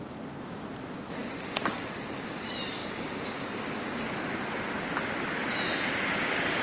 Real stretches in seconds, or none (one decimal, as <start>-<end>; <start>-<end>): 0.0-6.6